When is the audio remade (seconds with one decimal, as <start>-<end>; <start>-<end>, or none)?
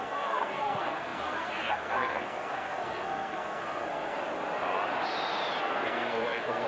0.0-4.2; 5.6-6.7